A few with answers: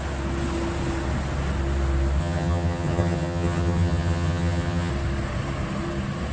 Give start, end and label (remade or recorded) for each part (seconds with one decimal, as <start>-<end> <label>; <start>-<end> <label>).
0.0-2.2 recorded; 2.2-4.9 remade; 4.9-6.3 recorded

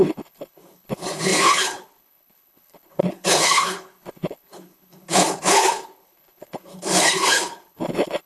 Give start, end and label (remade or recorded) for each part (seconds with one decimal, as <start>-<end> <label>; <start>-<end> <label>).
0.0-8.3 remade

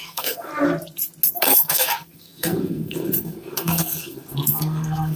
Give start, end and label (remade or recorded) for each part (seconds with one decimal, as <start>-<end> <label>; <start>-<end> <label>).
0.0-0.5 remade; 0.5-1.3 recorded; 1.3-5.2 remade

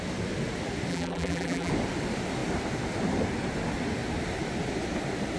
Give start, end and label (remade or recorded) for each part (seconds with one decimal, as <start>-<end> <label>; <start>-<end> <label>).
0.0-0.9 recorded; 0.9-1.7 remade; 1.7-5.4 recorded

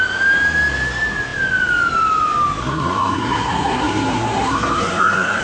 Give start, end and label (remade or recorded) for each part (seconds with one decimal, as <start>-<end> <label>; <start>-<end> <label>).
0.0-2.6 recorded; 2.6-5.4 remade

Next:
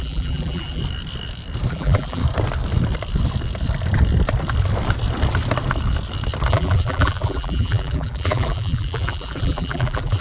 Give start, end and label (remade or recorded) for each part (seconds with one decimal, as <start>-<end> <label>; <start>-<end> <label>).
0.0-0.8 remade; 0.8-1.7 recorded; 1.7-2.2 remade; 2.2-6.5 recorded; 6.5-10.2 remade

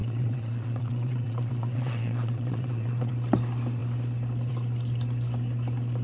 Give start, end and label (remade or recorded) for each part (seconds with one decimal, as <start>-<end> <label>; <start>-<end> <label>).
0.0-3.1 remade; 3.1-6.0 recorded